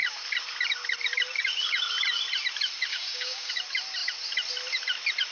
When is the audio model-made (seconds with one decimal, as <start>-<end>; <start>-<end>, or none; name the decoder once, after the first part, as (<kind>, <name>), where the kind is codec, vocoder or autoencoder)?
2.9-3.5 (codec, DAC)